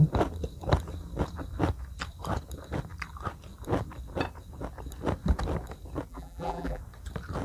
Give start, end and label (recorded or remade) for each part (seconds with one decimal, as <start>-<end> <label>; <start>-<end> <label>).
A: 0.0-6.1 recorded; 6.1-6.8 remade; 6.8-7.4 recorded